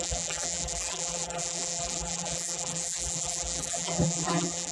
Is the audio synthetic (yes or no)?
yes